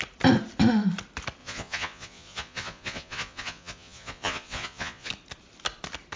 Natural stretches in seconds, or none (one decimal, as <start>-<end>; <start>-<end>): 0.0-1.4; 5.1-6.2